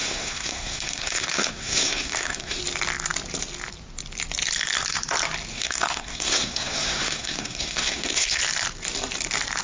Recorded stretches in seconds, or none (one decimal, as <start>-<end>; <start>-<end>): 2.6-5.5; 8.4-9.6